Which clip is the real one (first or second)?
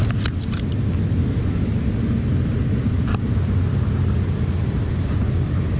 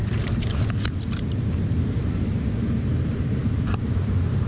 first